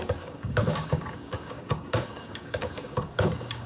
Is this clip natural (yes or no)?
no